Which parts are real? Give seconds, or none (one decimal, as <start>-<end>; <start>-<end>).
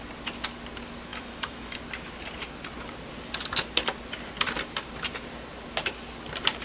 0.0-1.1; 1.8-6.6